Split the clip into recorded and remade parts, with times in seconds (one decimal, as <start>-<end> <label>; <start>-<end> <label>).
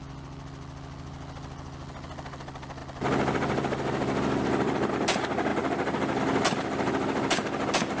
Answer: 0.0-8.0 recorded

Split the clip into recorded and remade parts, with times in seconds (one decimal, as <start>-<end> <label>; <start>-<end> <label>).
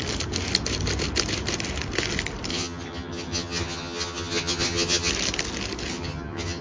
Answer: 0.0-2.5 recorded; 2.5-5.1 remade; 5.1-5.9 recorded; 5.9-6.6 remade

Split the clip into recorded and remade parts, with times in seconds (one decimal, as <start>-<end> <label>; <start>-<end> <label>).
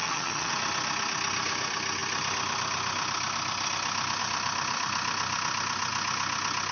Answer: 0.0-0.5 remade; 0.5-6.7 recorded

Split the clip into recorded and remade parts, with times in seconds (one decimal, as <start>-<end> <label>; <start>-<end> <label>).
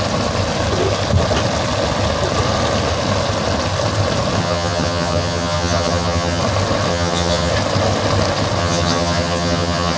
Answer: 0.0-4.4 recorded; 4.4-6.4 remade; 6.4-6.9 recorded; 6.9-7.5 remade; 7.5-8.6 recorded; 8.6-10.0 remade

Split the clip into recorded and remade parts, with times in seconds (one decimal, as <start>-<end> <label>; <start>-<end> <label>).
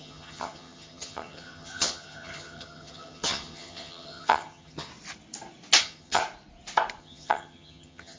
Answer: 0.0-4.9 remade; 4.9-5.8 recorded; 5.8-6.2 remade; 6.2-7.0 recorded; 7.0-8.2 remade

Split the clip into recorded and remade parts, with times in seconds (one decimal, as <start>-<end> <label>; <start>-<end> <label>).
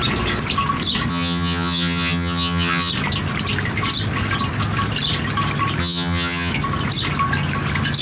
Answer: 0.0-1.1 recorded; 1.1-2.9 remade; 2.9-5.8 recorded; 5.8-6.5 remade; 6.5-8.0 recorded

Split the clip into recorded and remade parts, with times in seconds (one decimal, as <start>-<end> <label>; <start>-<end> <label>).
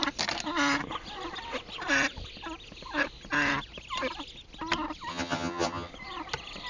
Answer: 0.0-5.1 recorded; 5.1-5.9 remade; 5.9-6.7 recorded